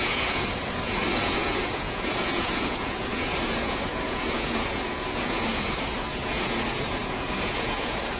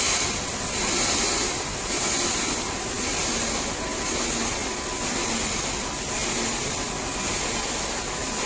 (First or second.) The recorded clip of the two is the second